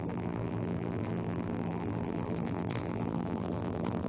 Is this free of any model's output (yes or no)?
no